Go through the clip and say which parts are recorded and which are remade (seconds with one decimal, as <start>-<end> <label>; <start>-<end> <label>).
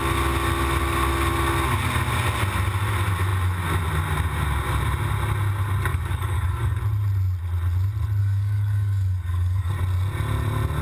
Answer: 0.0-5.9 recorded; 5.9-6.8 remade; 6.8-8.2 recorded; 8.2-9.7 remade; 9.7-10.8 recorded